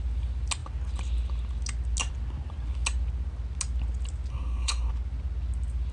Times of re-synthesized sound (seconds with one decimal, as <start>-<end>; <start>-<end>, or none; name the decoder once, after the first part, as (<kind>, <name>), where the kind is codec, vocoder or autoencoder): 4.3-4.9 (codec, SNAC)